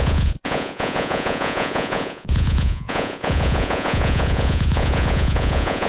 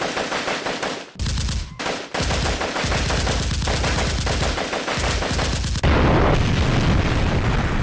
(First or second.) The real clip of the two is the second